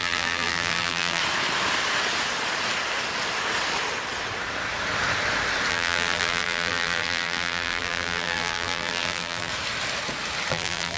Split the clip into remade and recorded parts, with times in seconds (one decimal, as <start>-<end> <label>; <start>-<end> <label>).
0.0-1.2 remade; 1.2-5.7 recorded; 5.7-9.5 remade; 9.5-10.5 recorded; 10.5-11.0 remade